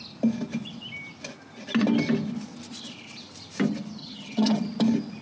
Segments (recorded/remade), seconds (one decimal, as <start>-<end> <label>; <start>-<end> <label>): 0.0-4.0 recorded; 4.0-4.6 remade; 4.6-5.2 recorded